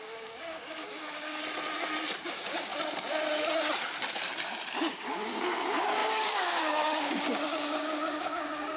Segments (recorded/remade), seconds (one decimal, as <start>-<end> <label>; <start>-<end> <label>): 0.0-1.4 remade; 1.4-2.3 recorded; 2.3-2.7 remade; 2.7-4.9 recorded; 4.9-8.8 remade